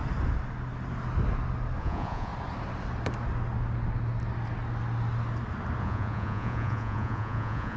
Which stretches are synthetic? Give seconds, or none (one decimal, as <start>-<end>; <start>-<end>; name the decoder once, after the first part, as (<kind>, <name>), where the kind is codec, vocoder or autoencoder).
1.8-2.3 (vocoder, Vocos); 5.8-7.8